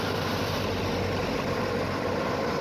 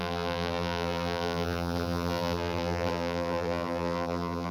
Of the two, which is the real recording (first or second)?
first